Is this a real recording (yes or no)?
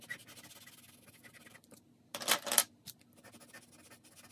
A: yes